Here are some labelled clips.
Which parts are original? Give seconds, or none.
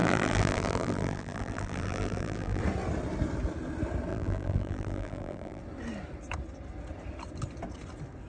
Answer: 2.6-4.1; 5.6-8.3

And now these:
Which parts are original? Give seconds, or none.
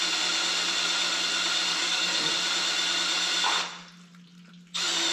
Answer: 0.0-1.7; 2.3-5.1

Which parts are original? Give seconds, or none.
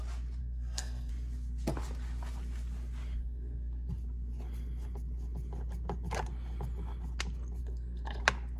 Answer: 0.0-0.4; 1.1-3.2; 3.9-7.6; 8.2-8.6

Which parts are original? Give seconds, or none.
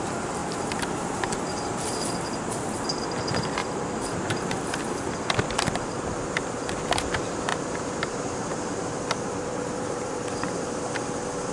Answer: 0.0-0.4; 1.2-3.6; 4.8-7.5; 10.8-11.5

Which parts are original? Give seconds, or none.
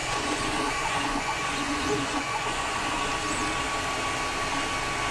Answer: 3.1-5.1